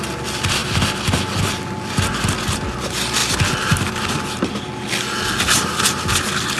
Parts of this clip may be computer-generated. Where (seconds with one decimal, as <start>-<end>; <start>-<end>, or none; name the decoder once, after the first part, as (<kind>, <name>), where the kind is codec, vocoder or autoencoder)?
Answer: none

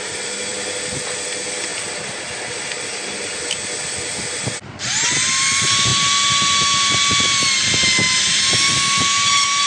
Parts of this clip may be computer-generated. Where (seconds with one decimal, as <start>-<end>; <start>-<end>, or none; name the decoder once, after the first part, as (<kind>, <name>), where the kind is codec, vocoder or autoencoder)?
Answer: none